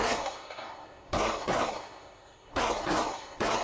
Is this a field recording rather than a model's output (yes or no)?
no